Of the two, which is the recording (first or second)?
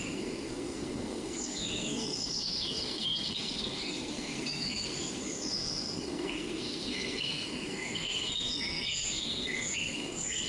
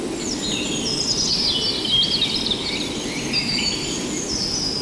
second